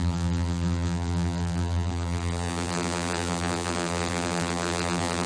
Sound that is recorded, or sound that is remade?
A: remade